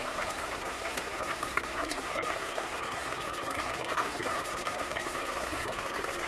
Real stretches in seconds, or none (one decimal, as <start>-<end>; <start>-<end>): none